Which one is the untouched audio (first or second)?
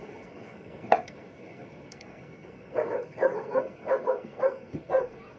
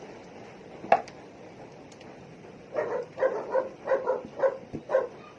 second